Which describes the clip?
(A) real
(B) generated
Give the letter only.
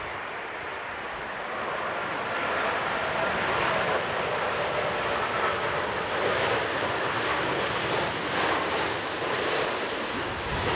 A